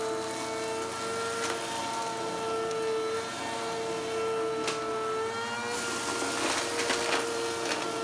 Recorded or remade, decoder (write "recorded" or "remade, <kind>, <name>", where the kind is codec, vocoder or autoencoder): recorded